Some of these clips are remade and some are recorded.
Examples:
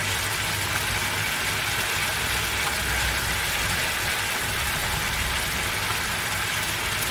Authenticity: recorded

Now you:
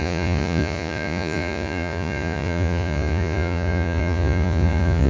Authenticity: remade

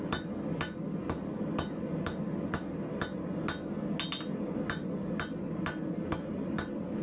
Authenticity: recorded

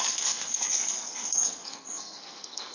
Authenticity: remade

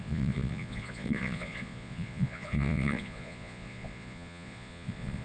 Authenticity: remade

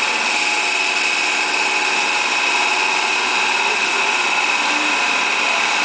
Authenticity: recorded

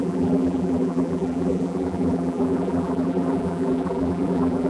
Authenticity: remade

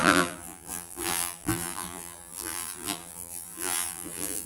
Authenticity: remade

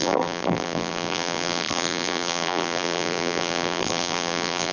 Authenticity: remade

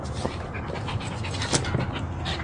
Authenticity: recorded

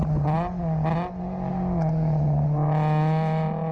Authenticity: recorded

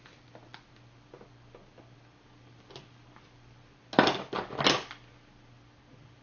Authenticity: recorded